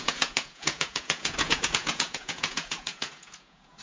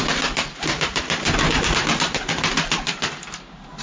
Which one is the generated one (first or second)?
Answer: first